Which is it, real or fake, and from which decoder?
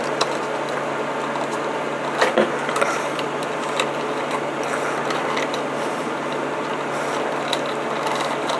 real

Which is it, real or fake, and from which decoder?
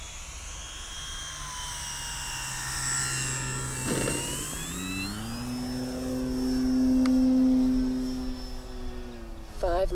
real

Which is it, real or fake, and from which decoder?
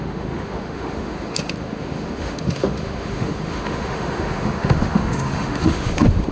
fake, autoencoder, DAC-VAE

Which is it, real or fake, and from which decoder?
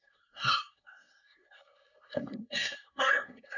fake, codec, SNAC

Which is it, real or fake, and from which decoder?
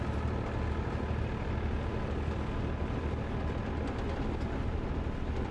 real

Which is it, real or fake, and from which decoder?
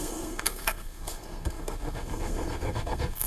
fake, codec, SNAC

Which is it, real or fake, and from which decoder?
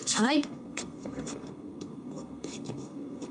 fake, codec, SNAC